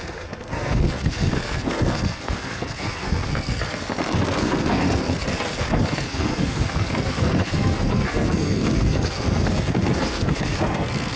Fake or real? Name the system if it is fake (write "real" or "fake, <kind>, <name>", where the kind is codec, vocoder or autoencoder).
fake, codec, SNAC